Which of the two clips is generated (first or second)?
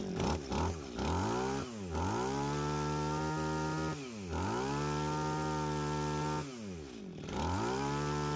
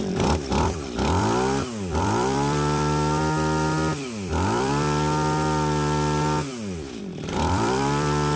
second